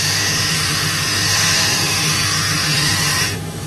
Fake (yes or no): yes